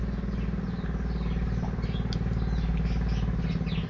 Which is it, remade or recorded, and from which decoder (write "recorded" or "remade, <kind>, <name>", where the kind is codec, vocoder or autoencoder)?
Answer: recorded